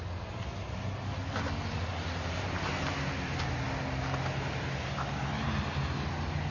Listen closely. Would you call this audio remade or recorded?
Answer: recorded